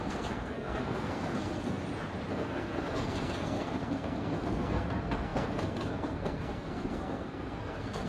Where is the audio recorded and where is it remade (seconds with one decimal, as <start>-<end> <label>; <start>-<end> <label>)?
0.0-1.8 remade; 1.8-2.3 recorded; 2.3-8.1 remade